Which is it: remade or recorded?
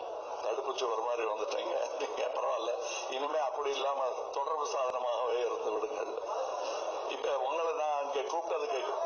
remade